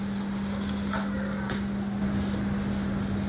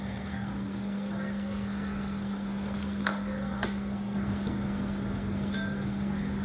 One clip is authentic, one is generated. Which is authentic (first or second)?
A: first